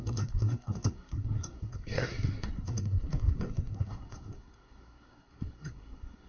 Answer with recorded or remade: remade